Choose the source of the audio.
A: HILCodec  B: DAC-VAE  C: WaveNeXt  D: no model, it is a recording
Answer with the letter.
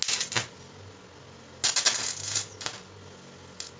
D